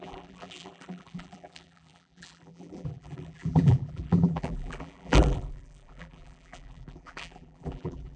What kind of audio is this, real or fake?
fake